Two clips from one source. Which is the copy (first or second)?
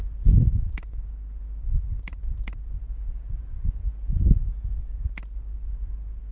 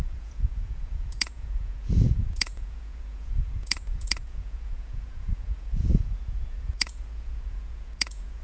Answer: second